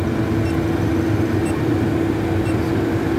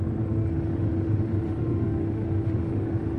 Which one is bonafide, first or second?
first